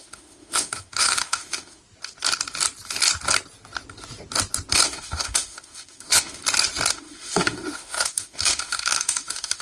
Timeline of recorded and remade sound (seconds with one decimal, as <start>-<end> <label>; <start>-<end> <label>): 0.0-1.8 remade; 1.8-4.7 recorded; 4.7-6.4 remade; 6.4-6.9 recorded; 6.9-9.6 remade